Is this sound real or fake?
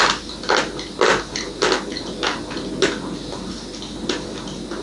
real